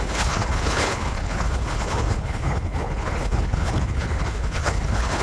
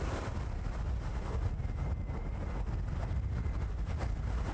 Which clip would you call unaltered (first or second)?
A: second